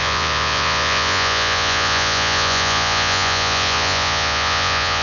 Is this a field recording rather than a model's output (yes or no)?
no